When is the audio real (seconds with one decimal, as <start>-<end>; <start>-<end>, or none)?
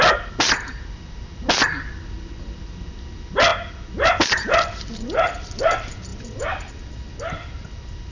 0.0-6.1; 6.7-8.1